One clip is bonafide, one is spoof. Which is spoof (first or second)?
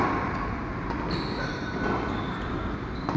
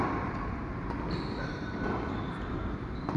second